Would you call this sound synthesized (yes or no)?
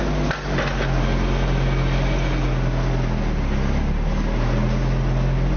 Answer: no